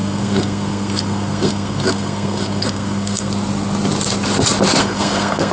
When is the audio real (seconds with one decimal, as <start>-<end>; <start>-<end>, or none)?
3.3-4.8